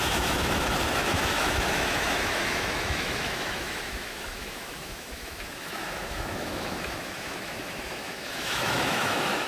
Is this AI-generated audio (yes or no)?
yes